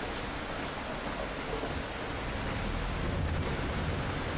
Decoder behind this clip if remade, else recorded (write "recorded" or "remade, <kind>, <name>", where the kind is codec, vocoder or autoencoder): recorded